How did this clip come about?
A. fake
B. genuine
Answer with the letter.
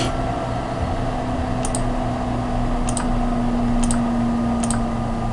B